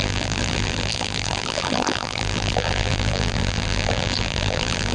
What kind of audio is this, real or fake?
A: fake